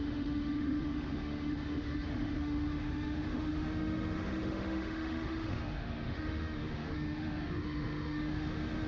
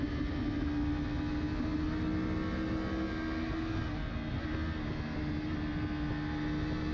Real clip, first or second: second